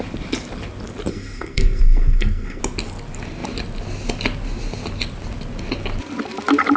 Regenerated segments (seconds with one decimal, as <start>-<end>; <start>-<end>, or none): 1.1-2.6